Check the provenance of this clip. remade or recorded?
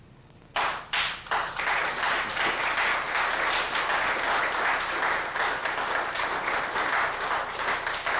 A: recorded